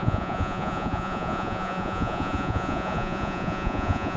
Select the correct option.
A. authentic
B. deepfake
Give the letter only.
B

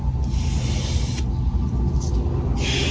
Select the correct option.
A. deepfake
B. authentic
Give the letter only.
B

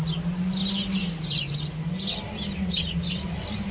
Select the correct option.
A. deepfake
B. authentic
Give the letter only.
B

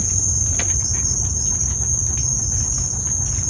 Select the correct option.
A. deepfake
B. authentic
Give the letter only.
B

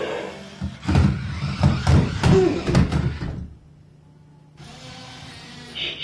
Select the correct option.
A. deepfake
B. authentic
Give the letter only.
B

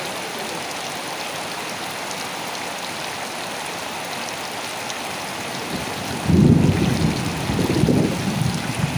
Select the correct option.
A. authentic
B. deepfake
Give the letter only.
A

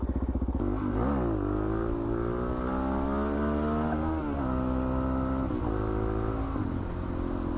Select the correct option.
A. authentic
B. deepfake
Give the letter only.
A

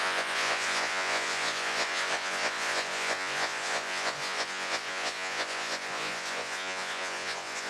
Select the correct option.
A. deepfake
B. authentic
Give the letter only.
A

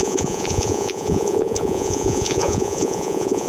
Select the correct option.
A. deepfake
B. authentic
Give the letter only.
A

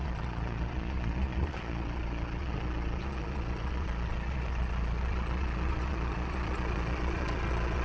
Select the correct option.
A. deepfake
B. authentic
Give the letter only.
A